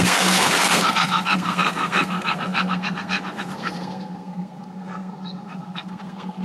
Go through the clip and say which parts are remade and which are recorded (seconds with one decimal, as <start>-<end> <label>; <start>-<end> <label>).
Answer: 0.0-6.4 remade